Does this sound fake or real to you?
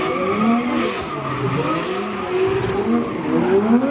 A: real